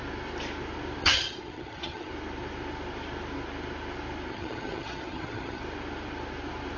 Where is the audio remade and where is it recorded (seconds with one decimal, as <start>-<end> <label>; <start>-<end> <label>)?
0.0-1.0 recorded; 1.0-2.1 remade; 2.1-4.3 recorded; 4.3-5.6 remade; 5.6-6.8 recorded